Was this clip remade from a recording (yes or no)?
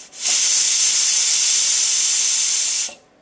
no